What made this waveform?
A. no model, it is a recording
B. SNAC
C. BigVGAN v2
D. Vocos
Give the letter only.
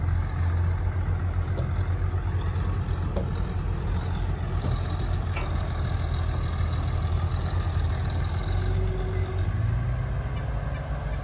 A